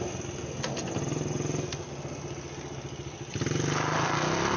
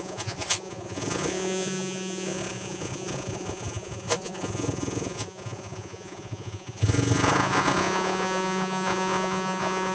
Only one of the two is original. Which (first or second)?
first